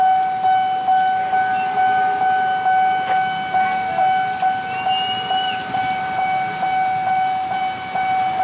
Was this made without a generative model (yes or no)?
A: yes